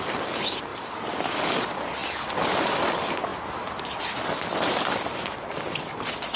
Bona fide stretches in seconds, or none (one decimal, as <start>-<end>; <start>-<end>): none